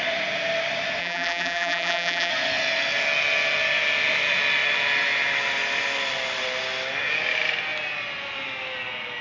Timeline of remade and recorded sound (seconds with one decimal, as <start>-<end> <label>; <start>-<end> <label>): 0.0-1.0 recorded; 1.0-2.3 remade; 2.3-9.2 recorded